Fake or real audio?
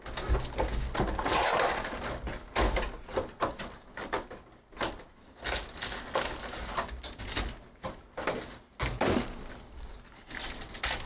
real